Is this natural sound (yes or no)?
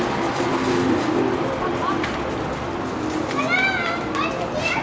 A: yes